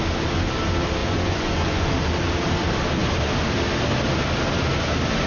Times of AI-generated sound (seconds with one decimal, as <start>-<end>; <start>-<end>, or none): 1.0-1.9